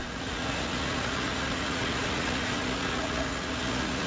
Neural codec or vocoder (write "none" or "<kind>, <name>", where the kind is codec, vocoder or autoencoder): vocoder, Vocos